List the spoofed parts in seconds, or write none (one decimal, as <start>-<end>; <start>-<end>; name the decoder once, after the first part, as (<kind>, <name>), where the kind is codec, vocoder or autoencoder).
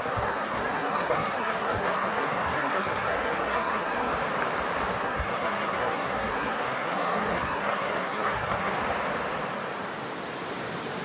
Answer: 0.0-4.1 (codec, SNAC); 4.9-8.7